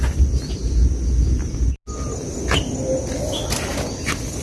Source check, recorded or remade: recorded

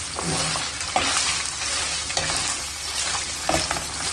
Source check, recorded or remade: recorded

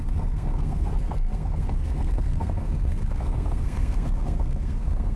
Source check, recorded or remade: remade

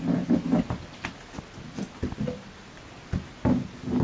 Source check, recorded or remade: recorded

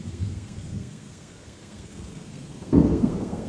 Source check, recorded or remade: remade